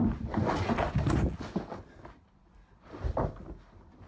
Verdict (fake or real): real